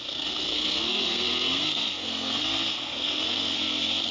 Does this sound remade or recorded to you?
remade